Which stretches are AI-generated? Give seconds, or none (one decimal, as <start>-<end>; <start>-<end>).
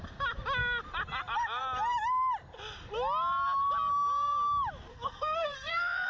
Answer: 4.9-6.1